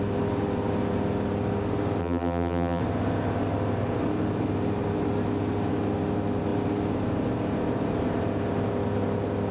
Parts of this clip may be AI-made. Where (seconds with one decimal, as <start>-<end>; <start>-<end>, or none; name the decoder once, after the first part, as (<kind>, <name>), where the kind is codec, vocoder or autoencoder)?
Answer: 2.0-2.8 (vocoder, BigVGAN v2)